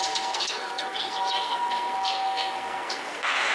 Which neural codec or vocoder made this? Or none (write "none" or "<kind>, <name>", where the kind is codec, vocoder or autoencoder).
codec, SNAC